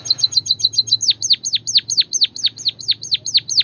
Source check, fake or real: real